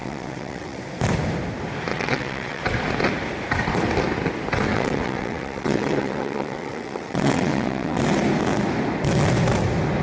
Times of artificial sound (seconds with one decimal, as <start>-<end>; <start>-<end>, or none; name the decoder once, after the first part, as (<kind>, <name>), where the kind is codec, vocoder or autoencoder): 0.0-0.8 (vocoder, WaveNeXt); 1.9-2.6; 4.7-8.0